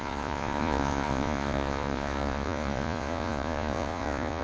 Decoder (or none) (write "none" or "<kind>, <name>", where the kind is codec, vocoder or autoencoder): vocoder, Vocos